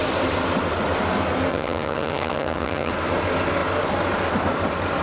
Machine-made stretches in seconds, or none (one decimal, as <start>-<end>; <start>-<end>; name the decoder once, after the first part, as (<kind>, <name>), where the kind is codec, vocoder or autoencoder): 1.5-2.9 (vocoder, HiFi-GAN)